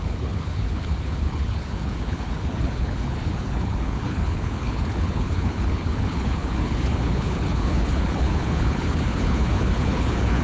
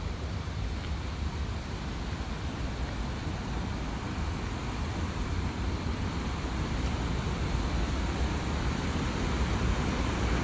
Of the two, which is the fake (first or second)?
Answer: first